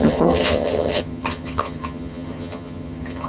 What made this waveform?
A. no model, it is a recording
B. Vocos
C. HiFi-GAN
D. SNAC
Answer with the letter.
C